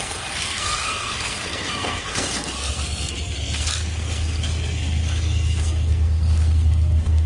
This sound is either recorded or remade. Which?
remade